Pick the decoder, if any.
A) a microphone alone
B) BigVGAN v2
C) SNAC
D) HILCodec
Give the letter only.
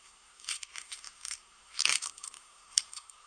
C